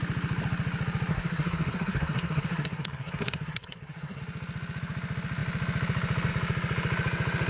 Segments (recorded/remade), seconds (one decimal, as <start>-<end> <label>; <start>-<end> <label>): 0.0-1.1 recorded; 1.1-4.2 remade; 4.2-7.5 recorded